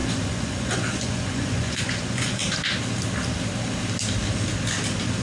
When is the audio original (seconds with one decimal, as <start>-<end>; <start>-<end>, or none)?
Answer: 2.4-5.2